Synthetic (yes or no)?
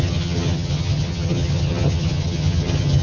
yes